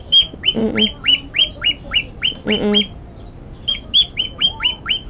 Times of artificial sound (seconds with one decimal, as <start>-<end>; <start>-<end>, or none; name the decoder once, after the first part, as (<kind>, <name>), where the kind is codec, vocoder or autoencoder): 0.0-0.6 (autoencoder, DAC-VAE); 3.7-5.1